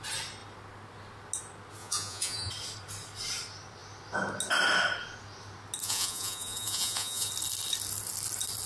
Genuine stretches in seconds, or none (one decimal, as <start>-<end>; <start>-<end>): 0.0-1.8; 2.5-5.8; 7.3-8.7